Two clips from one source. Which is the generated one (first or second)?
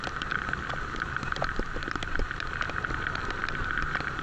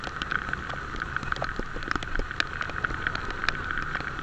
first